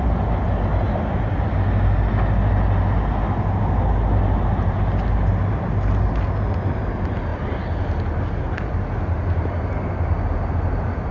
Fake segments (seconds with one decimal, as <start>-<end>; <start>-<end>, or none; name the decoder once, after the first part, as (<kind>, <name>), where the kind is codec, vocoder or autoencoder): none